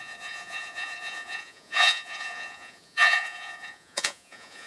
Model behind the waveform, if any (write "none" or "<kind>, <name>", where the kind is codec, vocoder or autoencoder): vocoder, Vocos